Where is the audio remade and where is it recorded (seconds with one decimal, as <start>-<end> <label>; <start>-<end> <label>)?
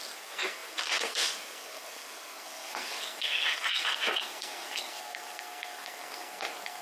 0.0-6.8 remade